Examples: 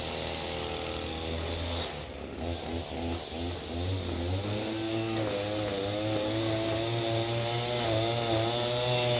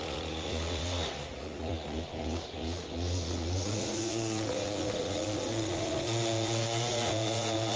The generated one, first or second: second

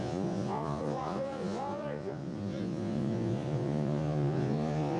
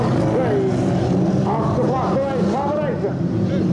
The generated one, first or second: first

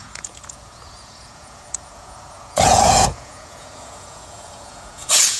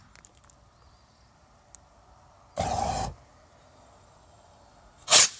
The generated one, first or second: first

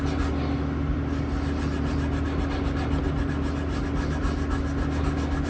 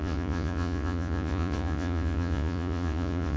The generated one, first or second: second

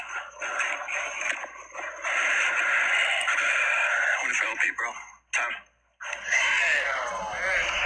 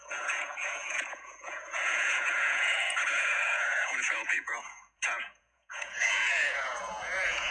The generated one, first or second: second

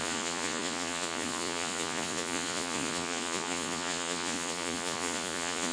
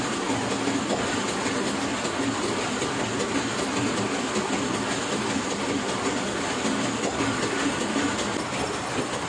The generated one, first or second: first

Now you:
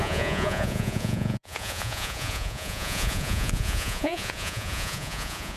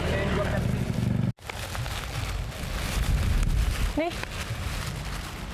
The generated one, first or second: first